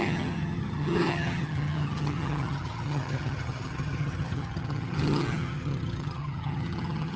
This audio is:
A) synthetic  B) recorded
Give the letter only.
A